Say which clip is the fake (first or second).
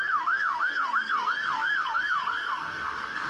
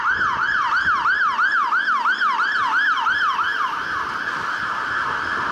first